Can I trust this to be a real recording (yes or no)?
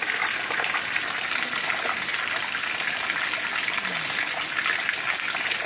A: yes